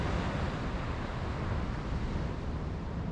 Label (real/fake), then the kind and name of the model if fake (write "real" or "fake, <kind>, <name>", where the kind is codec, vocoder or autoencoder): real